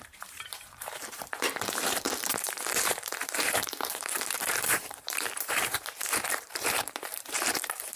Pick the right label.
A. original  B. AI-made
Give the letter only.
B